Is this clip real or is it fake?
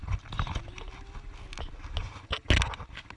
real